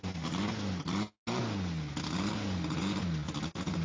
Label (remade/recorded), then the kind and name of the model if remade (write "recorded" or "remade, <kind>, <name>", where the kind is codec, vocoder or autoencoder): recorded